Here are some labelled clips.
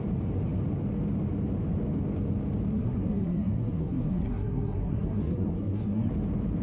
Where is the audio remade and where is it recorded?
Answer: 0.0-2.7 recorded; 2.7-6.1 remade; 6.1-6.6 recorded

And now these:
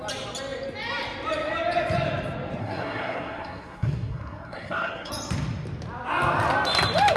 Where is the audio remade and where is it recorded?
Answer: 0.0-2.6 recorded; 2.6-5.1 remade; 5.1-7.2 recorded

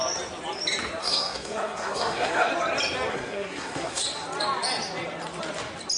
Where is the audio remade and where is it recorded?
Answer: 0.0-1.0 recorded; 1.0-2.5 remade; 2.5-3.1 recorded; 3.1-4.0 remade; 4.0-6.0 recorded

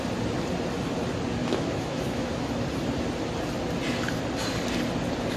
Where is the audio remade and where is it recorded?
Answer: 0.0-1.4 recorded; 1.4-2.3 remade; 2.3-5.4 recorded

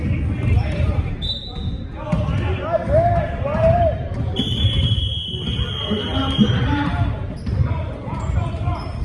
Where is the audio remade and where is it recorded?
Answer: 0.0-0.6 recorded; 0.6-1.4 remade; 1.4-3.2 recorded; 3.2-5.1 remade; 5.1-6.2 recorded; 6.2-9.0 remade